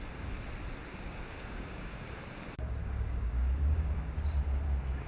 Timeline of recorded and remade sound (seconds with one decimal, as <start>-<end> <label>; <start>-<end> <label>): 0.0-0.9 recorded; 0.9-1.9 remade; 1.9-2.8 recorded; 2.8-4.4 remade; 4.4-5.1 recorded